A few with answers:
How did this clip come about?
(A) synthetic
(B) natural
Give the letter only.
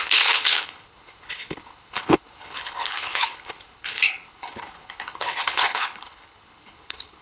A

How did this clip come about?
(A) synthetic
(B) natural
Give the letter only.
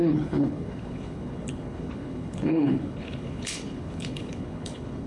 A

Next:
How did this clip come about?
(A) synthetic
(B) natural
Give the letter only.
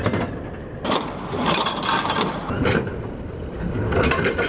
B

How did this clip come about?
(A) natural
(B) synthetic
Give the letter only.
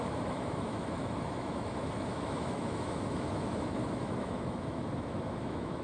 B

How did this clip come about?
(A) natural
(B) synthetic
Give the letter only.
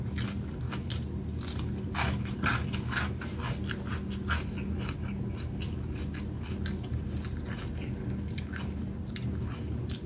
A